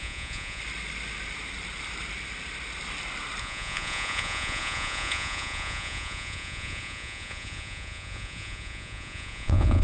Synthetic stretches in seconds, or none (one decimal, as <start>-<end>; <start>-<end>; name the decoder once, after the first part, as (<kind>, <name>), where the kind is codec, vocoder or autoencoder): 0.0-0.6 (vocoder, Vocos); 3.4-9.8